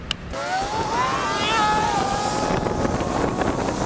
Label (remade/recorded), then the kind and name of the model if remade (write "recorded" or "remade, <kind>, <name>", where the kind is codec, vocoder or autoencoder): recorded